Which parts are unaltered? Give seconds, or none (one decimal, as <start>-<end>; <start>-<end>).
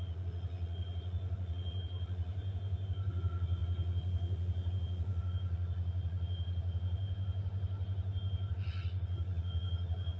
2.3-3.1; 7.0-8.5